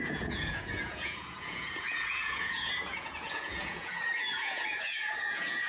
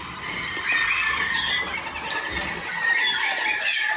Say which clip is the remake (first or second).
first